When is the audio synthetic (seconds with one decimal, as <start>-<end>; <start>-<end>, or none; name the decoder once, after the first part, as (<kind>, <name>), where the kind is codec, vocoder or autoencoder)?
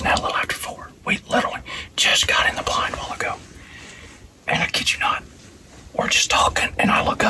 2.1-4.4 (vocoder, Vocos)